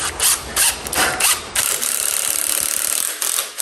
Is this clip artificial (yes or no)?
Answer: no